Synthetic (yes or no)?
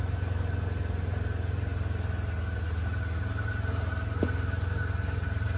no